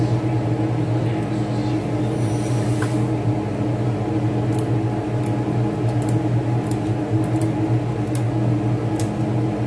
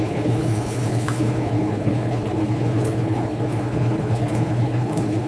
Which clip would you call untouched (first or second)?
first